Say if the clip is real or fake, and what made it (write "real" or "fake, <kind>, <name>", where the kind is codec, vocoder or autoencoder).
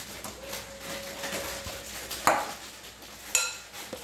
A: real